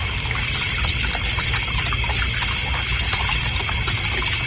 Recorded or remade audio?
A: recorded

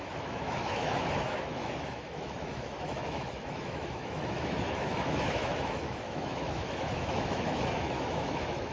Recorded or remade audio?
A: remade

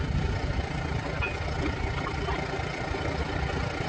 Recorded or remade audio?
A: recorded